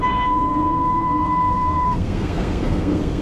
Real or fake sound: fake